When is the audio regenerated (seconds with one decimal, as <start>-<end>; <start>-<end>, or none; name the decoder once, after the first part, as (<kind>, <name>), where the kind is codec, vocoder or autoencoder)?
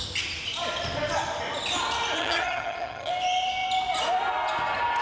2.2-3.1 (vocoder, HiFi-GAN)